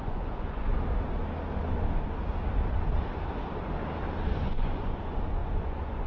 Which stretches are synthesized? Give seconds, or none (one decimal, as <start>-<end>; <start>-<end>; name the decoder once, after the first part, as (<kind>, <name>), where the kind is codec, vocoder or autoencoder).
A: 0.0-0.7 (vocoder, Vocos); 4.4-6.1